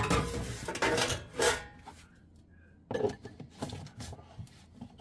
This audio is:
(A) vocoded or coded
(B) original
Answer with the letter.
B